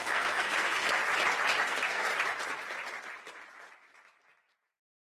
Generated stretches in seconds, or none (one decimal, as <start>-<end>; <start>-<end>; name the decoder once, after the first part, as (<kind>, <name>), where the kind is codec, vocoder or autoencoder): 0.0-1.0 (codec, SNAC); 1.6-2.1; 4.8-5.2